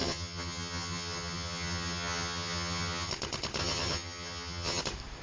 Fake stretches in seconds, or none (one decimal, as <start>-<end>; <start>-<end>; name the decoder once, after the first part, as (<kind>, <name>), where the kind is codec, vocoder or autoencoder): 0.0-3.1 (vocoder, HiFi-GAN); 3.6-4.8